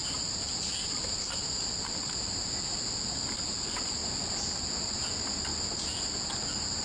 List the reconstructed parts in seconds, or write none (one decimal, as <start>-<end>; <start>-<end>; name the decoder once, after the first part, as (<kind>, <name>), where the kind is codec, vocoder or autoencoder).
none